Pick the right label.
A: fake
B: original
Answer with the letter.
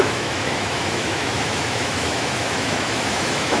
A